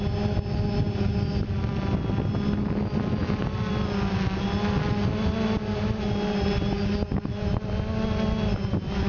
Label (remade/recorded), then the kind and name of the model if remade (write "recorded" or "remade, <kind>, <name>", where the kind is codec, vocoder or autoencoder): recorded